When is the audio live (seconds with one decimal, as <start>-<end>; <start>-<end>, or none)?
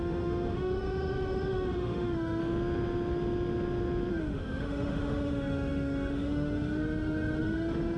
2.4-4.1